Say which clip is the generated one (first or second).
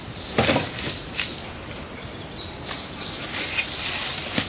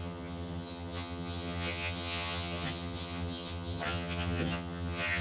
second